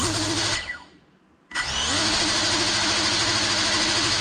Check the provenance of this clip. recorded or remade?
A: recorded